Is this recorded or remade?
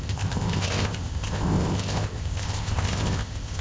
remade